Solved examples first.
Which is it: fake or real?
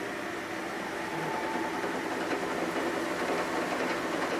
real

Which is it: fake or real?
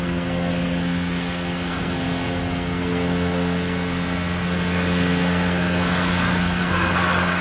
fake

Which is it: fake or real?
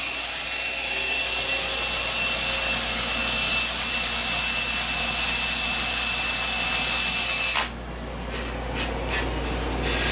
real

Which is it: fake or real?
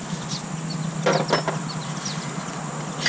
real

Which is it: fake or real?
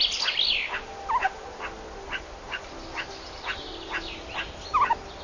real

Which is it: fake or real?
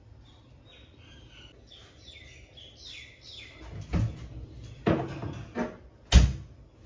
real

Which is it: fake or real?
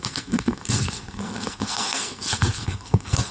fake